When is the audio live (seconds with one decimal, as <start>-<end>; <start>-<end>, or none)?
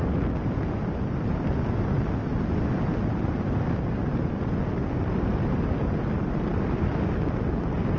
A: 0.0-8.0